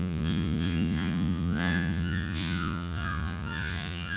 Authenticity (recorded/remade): remade